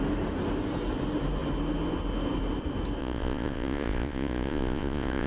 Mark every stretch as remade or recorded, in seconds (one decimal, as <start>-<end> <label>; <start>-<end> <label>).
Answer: 0.0-3.0 recorded; 3.0-5.3 remade